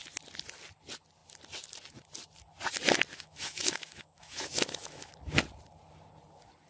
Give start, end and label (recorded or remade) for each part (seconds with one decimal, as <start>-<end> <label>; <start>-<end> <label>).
0.0-3.1 recorded; 3.1-5.1 remade; 5.1-6.7 recorded